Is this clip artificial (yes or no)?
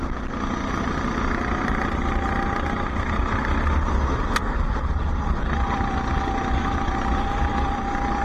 no